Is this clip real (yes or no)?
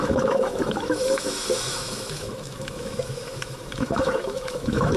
no